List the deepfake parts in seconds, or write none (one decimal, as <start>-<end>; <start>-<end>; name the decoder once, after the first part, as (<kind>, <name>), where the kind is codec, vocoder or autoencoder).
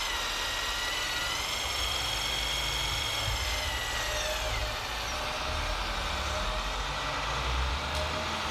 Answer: none